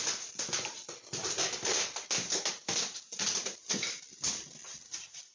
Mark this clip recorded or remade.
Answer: recorded